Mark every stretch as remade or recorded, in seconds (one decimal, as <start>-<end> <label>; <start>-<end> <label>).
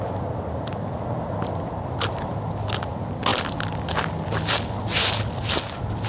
0.0-6.1 recorded